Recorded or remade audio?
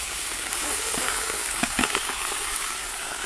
remade